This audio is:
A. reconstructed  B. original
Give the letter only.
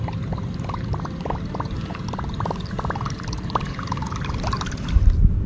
A